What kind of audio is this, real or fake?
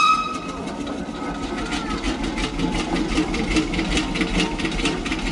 real